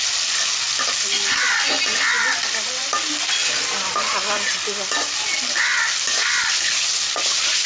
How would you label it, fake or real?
real